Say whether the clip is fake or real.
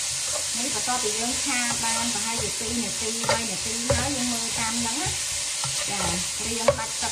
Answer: real